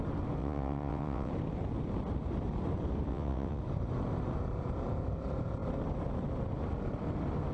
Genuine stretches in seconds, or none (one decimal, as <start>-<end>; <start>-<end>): 0.0-0.4; 1.3-3.1; 3.6-7.5